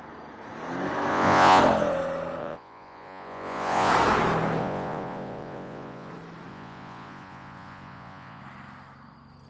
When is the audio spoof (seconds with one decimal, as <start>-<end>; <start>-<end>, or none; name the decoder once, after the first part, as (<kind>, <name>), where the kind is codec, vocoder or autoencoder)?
1.1-1.6 (vocoder, Vocos); 2.4-3.9; 4.6-6.1; 6.5-8.4